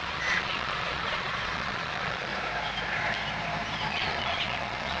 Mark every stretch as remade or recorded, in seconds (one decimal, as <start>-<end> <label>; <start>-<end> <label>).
0.0-2.3 remade; 2.3-3.9 recorded; 3.9-5.0 remade